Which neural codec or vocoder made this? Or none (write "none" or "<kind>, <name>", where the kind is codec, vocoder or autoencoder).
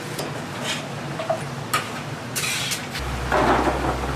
none